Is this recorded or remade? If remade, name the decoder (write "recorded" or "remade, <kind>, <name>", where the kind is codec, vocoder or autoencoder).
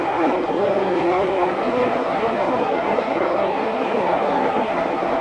remade, codec, SNAC